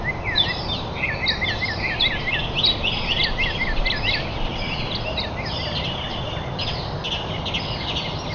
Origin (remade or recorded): recorded